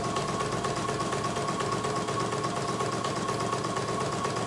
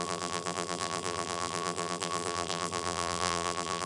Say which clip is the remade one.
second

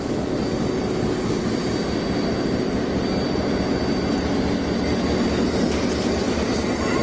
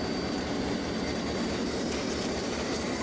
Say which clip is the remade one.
second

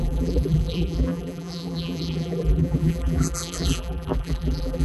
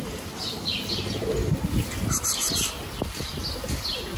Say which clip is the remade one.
first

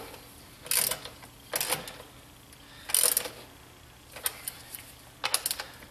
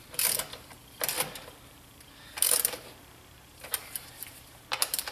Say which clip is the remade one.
second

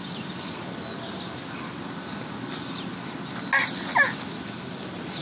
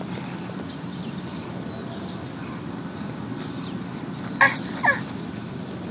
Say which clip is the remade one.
second